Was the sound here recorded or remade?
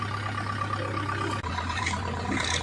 recorded